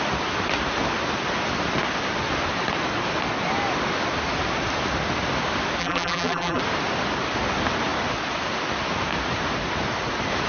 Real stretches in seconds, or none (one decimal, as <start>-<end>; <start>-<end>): 0.0-5.8; 6.6-10.5